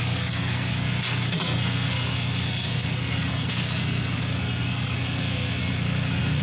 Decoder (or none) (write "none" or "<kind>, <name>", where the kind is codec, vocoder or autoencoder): codec, SNAC